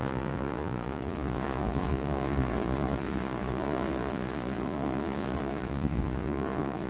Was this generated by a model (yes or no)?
yes